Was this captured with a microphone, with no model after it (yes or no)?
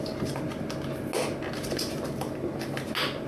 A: yes